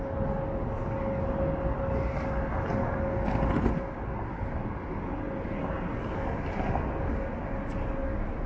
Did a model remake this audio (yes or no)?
no